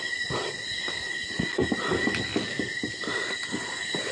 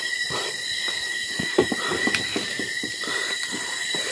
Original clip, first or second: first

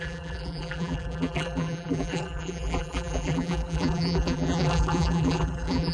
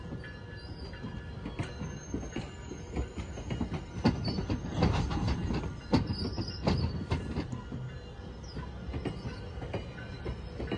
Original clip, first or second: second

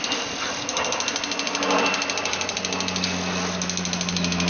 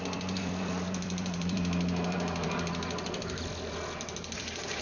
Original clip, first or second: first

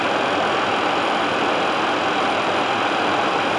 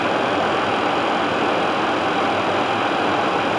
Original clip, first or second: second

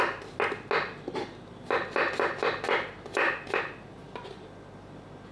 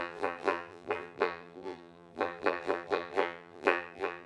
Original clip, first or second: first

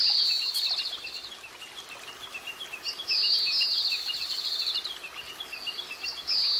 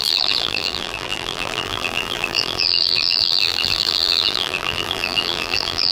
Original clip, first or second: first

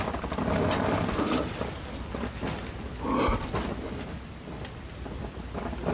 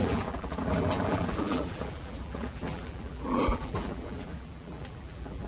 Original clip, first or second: first